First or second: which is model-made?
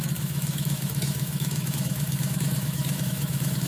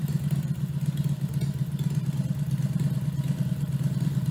first